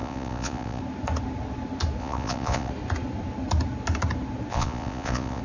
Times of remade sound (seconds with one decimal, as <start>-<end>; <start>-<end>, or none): 0.0-0.8; 2.0-2.7; 4.5-5.4